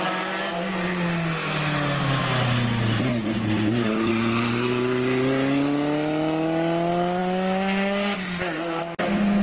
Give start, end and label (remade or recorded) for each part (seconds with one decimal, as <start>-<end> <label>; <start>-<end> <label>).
0.0-3.2 recorded; 3.2-4.1 remade; 4.1-9.4 recorded